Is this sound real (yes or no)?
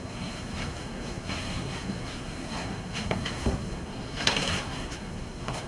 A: no